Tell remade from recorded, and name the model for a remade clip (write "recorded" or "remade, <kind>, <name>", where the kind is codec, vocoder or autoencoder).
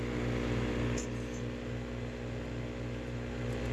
recorded